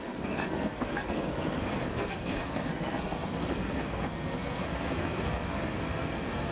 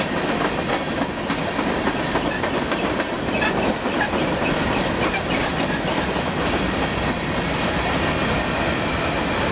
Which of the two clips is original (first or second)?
second